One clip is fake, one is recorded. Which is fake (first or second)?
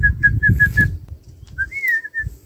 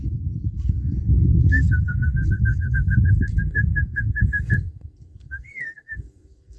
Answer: second